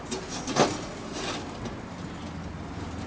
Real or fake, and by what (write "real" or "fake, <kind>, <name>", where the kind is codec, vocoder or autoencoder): real